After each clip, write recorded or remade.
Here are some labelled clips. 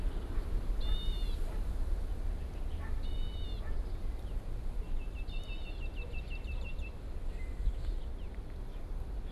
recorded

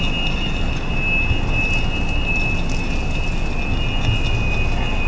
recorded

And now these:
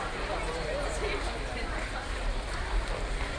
recorded